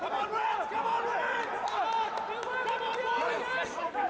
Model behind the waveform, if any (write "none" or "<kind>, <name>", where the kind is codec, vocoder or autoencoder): vocoder, BigVGAN v2